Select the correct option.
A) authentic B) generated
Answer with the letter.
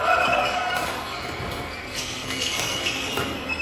B